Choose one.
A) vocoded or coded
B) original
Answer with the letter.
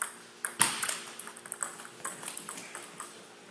B